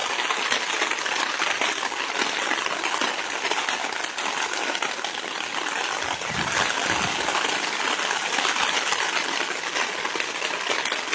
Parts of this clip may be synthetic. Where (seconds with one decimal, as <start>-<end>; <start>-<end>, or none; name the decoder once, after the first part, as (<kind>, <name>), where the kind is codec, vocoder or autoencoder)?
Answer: none